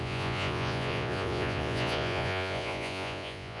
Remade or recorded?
remade